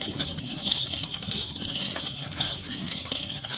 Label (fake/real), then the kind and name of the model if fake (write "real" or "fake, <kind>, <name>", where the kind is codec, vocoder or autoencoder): fake, codec, SNAC